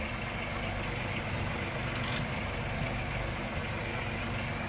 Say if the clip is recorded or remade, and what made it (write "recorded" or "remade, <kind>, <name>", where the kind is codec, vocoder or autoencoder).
recorded